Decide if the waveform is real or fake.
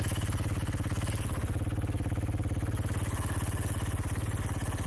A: real